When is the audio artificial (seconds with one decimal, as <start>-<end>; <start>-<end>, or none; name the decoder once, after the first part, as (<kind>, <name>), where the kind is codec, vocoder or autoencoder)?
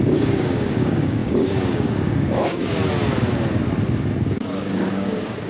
0.0-2.8 (codec, DAC); 4.2-5.5